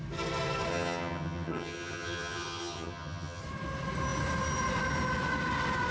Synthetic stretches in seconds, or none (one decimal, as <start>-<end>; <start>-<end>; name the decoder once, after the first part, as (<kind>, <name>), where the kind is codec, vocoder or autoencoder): 0.7-3.4 (vocoder, HiFi-GAN)